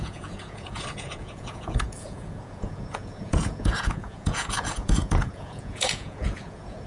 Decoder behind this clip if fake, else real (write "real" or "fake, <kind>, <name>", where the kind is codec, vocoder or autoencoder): fake, vocoder, Vocos